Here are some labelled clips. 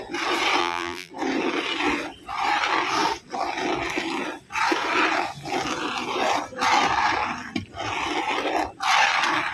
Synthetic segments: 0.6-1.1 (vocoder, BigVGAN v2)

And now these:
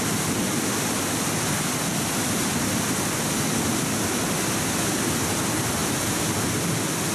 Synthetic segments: 5.8-6.6 (vocoder, BigVGAN v2)

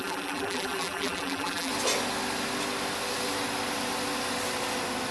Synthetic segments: 0.0-1.7 (vocoder, BigVGAN v2)

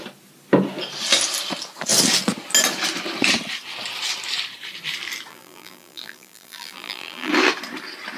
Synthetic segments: 5.3-7.3 (vocoder, BigVGAN v2)

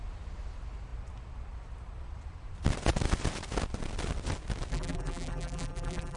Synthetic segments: 4.7-6.2 (vocoder, BigVGAN v2)

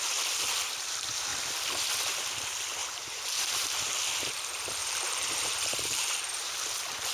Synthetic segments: 2.8-3.8 (vocoder, BigVGAN v2); 4.8-6.5